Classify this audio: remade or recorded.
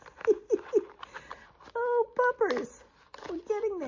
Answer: recorded